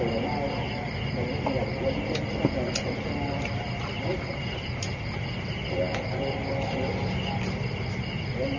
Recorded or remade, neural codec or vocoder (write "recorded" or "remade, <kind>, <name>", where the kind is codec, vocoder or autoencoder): recorded